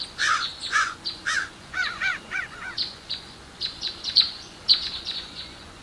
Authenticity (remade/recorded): remade